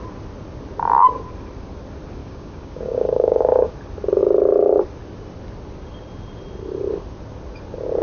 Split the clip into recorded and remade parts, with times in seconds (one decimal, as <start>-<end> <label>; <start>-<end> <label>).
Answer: 0.0-2.2 recorded; 2.2-3.7 remade; 3.7-8.0 recorded